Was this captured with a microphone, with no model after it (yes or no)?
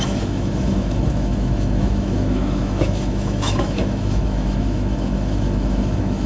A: no